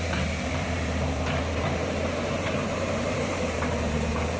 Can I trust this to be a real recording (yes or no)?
no